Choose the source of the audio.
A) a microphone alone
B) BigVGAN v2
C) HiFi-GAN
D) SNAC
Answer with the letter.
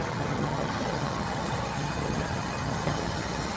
C